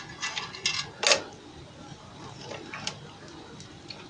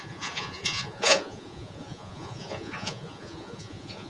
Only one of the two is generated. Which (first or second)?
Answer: second